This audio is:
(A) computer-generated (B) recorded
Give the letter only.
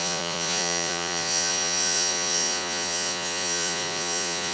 A